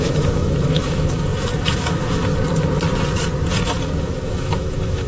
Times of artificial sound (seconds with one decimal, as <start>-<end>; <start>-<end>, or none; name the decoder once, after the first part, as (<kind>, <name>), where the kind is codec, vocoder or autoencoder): 0.0-2.3 (autoencoder, DAC-VAE); 4.0-5.1